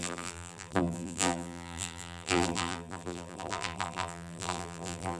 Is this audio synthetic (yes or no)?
yes